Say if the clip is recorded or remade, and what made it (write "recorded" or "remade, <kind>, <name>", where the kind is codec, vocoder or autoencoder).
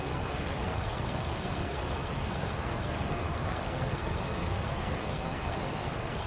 remade, codec, SNAC